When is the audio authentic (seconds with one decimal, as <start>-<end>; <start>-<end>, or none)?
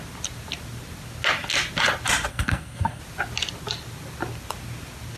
0.0-2.3; 3.0-5.2